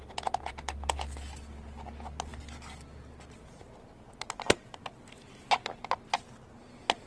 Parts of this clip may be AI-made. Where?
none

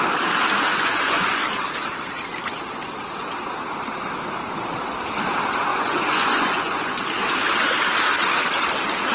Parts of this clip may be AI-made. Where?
0.7-1.5 (vocoder, Vocos); 5.7-7.0

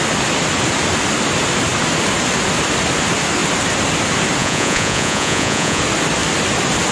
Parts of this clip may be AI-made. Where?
4.4-5.8 (vocoder, Vocos)

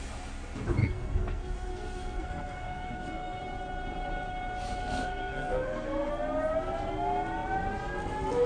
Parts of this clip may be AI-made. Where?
0.8-3.4 (codec, SNAC); 4.8-6.1

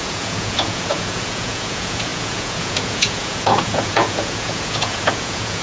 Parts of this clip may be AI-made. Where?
0.0-5.6 (vocoder, Vocos)

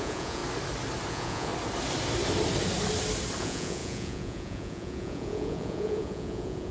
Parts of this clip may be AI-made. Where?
0.0-0.4 (vocoder, Vocos); 1.1-1.5; 3.4-6.7

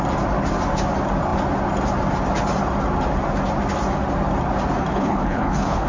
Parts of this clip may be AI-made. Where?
4.9-5.9 (codec, HILCodec)

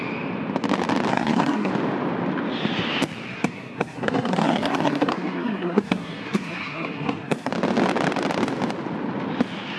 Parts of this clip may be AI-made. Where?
1.1-1.7 (codec, SNAC); 3.3-7.5